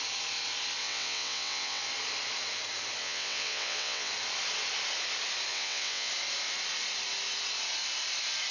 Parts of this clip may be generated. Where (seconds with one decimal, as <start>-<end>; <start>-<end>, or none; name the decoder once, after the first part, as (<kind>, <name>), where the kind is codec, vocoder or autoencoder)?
0.8-1.8 (vocoder, WaveNeXt); 3.0-4.1; 5.5-6.1